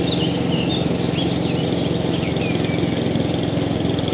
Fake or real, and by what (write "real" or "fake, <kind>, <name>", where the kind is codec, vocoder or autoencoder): real